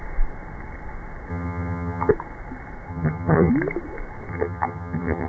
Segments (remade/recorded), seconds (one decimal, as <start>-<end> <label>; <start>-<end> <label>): 0.0-1.3 recorded; 1.3-2.1 remade; 2.1-2.9 recorded; 2.9-3.5 remade; 3.5-4.3 recorded; 4.3-5.3 remade